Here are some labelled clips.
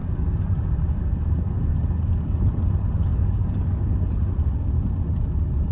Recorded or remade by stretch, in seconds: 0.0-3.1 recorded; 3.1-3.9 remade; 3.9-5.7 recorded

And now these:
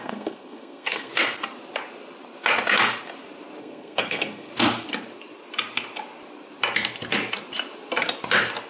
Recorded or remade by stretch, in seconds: 0.0-1.1 remade; 1.1-3.6 recorded; 3.6-4.5 remade; 4.5-8.7 recorded

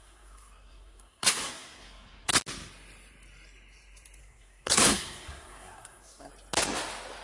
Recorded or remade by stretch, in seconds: 0.0-2.3 remade; 2.3-4.2 recorded; 4.2-6.3 remade; 6.3-7.2 recorded

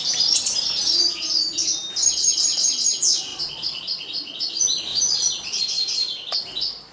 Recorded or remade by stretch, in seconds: 0.0-3.3 recorded; 3.3-4.5 remade; 4.5-4.9 recorded; 4.9-5.6 remade; 5.6-6.9 recorded

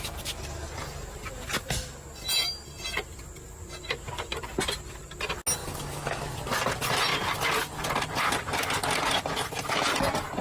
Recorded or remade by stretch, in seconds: 0.0-5.6 recorded; 5.6-6.2 remade; 6.2-10.4 recorded